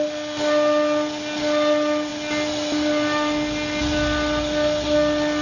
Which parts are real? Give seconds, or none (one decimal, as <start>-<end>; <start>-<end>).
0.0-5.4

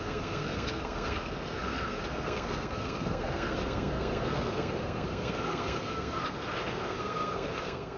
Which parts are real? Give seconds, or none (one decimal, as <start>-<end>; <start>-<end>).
none

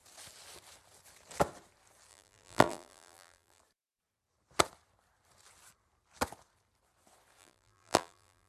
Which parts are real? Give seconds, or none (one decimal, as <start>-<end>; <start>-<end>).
0.0-2.1; 3.6-7.4

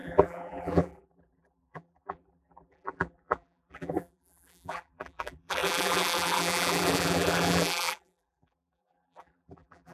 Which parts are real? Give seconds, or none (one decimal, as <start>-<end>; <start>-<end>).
none

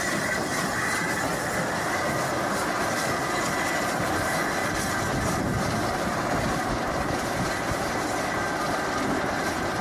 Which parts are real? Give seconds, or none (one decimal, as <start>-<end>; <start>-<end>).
0.0-4.6; 6.5-9.8

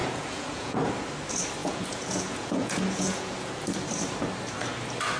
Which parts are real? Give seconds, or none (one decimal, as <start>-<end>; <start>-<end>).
0.9-1.6; 3.6-5.2

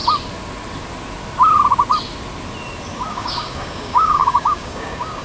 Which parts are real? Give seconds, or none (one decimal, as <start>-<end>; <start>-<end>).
0.0-3.1